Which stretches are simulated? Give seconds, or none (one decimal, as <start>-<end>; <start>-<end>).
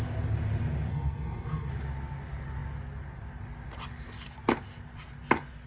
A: 0.9-1.7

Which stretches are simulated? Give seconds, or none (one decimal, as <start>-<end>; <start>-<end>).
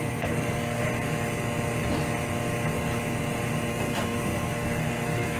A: 0.0-0.8; 3.7-5.4